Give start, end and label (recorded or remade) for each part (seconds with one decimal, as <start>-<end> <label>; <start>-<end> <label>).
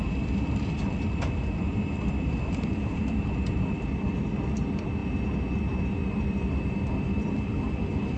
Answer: 0.0-5.0 remade; 5.0-6.4 recorded; 6.4-8.2 remade